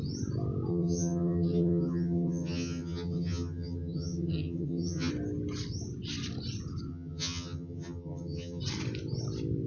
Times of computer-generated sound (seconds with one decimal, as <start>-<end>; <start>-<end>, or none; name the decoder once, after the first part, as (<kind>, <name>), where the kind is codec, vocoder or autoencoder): 0.7-5.1 (vocoder, HiFi-GAN); 6.9-8.6